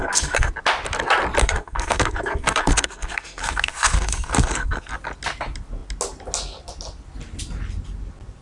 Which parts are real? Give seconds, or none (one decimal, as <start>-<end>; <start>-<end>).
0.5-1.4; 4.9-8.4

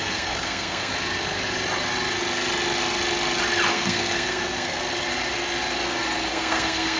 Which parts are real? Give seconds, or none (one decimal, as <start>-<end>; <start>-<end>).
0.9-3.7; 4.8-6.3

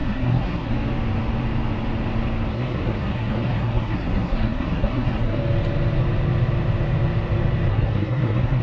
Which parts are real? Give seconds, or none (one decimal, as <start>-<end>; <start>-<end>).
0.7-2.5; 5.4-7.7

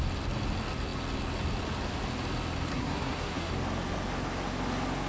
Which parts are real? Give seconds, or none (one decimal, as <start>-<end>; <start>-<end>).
0.0-2.7; 3.5-5.1

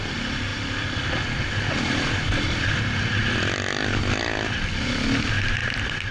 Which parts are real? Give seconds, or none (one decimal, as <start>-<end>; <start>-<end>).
0.0-5.6

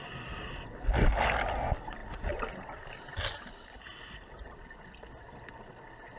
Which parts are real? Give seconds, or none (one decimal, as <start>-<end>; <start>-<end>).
0.0-6.2

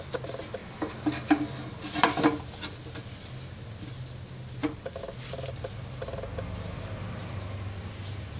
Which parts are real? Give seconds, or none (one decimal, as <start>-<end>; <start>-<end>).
0.0-8.4